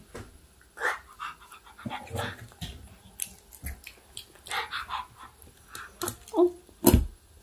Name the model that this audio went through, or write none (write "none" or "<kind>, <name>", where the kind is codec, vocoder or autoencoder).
none